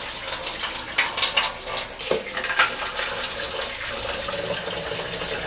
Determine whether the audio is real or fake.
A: real